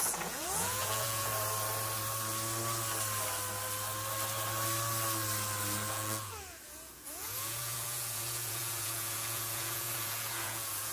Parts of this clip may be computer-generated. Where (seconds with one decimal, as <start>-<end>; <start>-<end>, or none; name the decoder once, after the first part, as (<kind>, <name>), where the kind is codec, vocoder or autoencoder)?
0.0-1.3 (vocoder, Vocos); 5.9-10.9

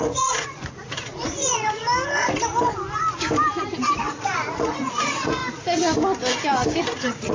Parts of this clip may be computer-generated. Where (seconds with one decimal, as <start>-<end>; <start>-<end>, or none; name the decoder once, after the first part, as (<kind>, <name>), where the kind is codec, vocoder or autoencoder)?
0.0-1.8 (vocoder, Vocos); 4.0-5.4; 6.8-7.3

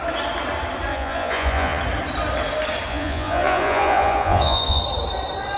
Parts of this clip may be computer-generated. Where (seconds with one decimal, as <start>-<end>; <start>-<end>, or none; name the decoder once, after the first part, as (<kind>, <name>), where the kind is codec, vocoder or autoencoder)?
0.9-1.8 (vocoder, Vocos); 2.9-4.8

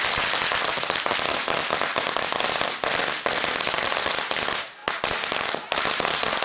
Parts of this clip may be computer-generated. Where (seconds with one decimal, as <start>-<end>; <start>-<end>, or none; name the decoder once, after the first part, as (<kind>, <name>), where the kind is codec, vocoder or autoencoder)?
none

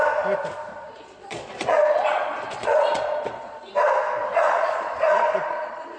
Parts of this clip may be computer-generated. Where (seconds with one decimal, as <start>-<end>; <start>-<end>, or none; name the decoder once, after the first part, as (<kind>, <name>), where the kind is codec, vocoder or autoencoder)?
0.7-3.7 (vocoder, Vocos); 4.2-6.0

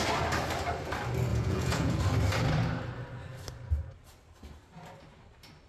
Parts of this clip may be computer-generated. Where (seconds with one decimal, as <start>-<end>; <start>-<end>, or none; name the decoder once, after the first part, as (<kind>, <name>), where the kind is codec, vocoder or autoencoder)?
1.3-2.0 (vocoder, Vocos)

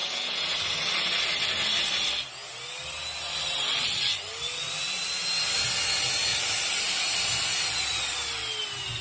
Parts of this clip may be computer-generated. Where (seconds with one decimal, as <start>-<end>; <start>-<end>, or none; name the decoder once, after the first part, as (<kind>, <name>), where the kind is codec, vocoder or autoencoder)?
0.0-0.6 (vocoder, Vocos)

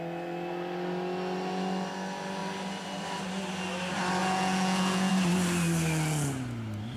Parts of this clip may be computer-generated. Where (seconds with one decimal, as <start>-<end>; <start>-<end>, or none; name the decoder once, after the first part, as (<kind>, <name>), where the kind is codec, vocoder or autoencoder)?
4.2-5.1 (vocoder, Vocos)